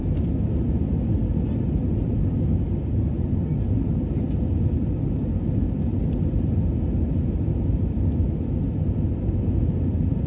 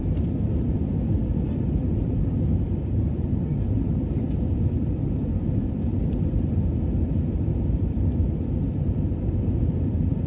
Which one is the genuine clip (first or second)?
first